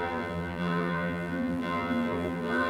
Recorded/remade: remade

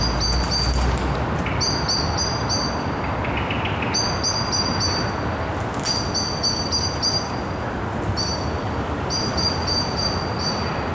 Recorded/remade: recorded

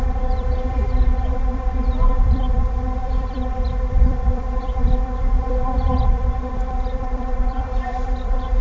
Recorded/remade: remade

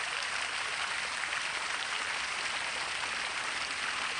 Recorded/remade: recorded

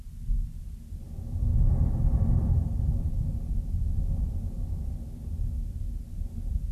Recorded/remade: recorded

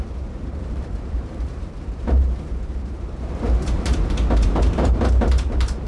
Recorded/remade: remade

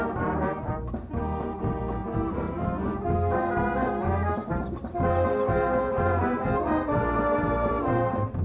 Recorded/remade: remade